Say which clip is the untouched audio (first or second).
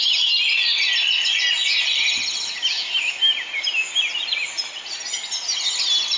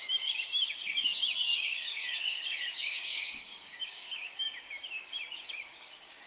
first